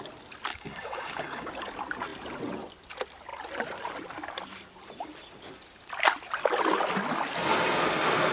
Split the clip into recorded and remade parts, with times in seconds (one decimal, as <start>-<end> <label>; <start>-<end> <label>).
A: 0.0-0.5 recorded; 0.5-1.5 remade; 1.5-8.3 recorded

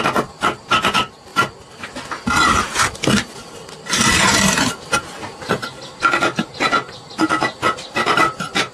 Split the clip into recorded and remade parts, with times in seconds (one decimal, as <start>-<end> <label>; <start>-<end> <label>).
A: 0.0-8.7 recorded

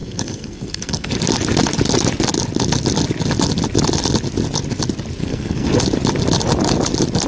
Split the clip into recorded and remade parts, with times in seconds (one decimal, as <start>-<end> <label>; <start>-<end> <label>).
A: 0.0-1.1 remade; 1.1-5.2 recorded; 5.2-5.8 remade; 5.8-7.3 recorded

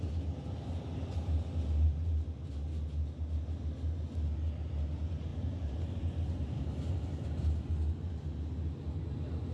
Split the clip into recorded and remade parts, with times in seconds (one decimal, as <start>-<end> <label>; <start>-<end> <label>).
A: 0.0-5.3 recorded; 5.3-7.7 remade; 7.7-9.5 recorded

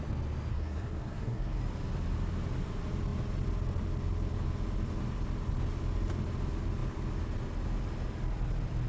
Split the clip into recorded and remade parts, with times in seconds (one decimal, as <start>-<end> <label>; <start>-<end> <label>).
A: 0.0-0.5 recorded; 0.5-1.6 remade; 1.6-8.9 recorded

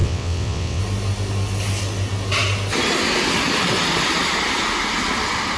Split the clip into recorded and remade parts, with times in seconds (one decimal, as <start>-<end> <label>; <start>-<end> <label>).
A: 0.0-0.8 remade; 0.8-5.6 recorded

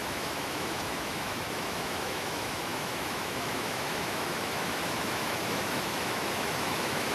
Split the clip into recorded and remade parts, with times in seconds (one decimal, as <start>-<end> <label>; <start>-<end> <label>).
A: 0.0-7.1 remade